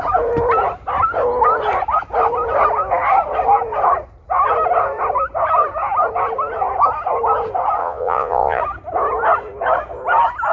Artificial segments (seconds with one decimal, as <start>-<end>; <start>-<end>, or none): 7.8-8.6